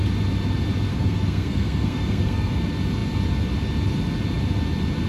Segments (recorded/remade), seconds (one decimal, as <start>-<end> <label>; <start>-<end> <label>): 0.0-0.9 recorded; 0.9-2.5 remade; 2.5-5.1 recorded